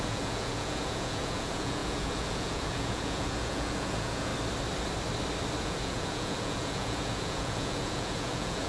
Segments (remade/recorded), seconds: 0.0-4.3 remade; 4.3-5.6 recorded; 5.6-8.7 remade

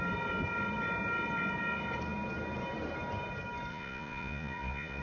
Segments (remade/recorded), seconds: 0.0-3.7 recorded; 3.7-5.0 remade

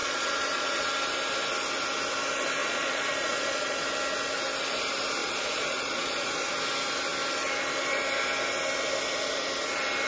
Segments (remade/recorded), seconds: 0.0-0.9 remade; 0.9-2.6 recorded; 2.6-3.9 remade; 3.9-5.2 recorded; 5.2-6.5 remade; 6.5-10.1 recorded

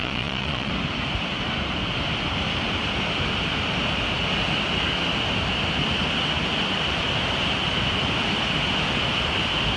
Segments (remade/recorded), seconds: 0.0-0.7 remade; 0.7-9.8 recorded